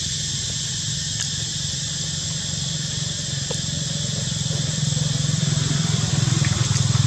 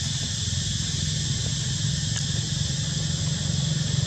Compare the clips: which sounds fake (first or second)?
first